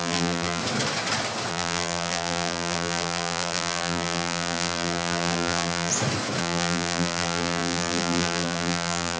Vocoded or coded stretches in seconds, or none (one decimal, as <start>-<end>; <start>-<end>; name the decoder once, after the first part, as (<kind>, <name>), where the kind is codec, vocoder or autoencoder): 0.0-0.6 (vocoder, BigVGAN v2); 1.5-5.9; 6.4-9.2